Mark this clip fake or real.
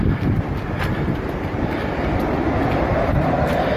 real